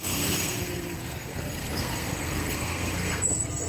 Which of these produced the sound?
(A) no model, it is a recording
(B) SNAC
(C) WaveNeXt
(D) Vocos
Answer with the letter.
B